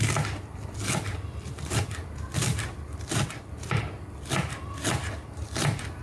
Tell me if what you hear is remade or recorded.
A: remade